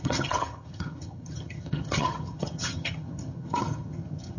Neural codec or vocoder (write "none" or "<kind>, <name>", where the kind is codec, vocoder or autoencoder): vocoder, HiFi-GAN